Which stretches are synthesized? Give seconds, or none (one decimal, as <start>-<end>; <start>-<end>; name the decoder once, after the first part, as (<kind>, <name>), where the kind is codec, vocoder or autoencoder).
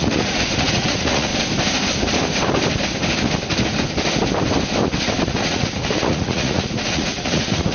0.0-1.3 (vocoder, Vocos); 5.2-7.7